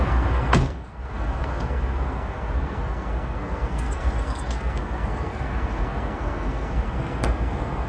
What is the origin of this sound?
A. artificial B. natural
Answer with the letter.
A